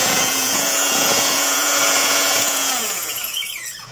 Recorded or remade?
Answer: remade